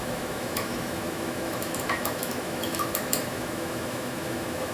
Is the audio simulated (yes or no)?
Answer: yes